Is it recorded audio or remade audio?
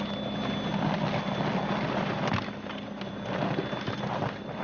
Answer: recorded